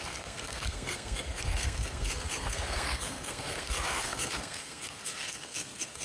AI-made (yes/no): yes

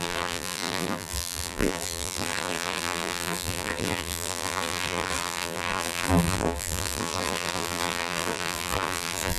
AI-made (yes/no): yes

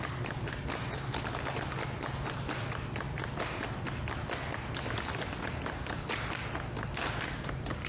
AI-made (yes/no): no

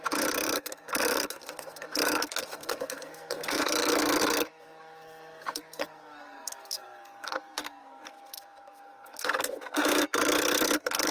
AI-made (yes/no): yes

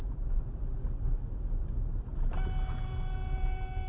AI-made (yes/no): no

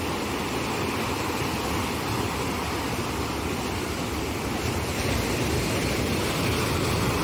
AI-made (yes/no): no